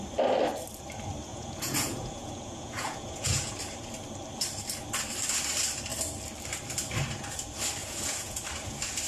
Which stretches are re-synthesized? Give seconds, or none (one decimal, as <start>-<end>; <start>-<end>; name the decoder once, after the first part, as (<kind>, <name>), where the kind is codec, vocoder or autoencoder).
1.3-3.5 (vocoder, Vocos); 7.8-8.4